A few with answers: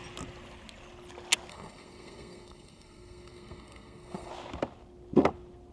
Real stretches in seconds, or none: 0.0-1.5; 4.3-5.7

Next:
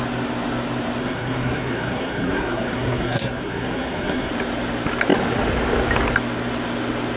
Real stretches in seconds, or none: 0.0-1.0; 4.3-7.2

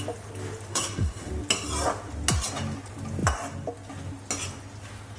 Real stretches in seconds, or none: 0.0-0.7; 1.3-5.2

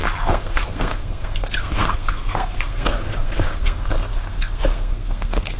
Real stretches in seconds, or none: none

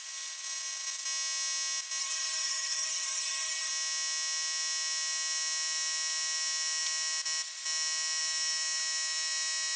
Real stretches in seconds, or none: 0.0-2.0; 3.7-9.8